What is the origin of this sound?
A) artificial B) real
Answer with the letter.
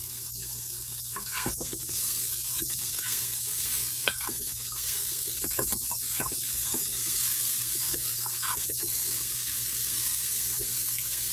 A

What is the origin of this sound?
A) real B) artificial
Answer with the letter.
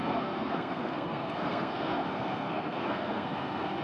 B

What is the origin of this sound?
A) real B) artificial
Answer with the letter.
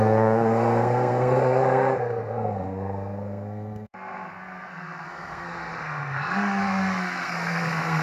B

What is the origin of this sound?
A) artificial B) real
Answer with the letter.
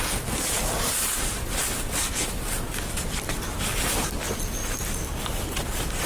B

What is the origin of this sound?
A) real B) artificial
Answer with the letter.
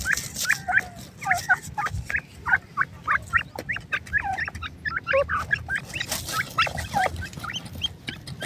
A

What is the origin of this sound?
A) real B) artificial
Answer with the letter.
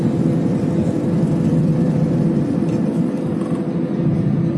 A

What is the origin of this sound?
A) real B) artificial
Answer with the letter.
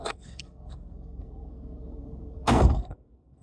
B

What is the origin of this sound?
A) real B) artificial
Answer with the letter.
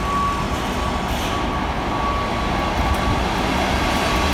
A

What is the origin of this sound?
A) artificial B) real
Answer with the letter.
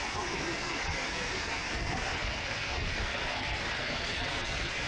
A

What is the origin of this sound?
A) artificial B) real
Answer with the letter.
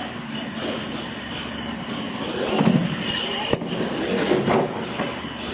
B